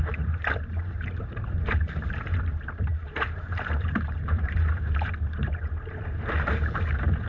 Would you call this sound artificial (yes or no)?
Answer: yes